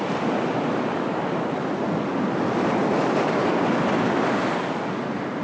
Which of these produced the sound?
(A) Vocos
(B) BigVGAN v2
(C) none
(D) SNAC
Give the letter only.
C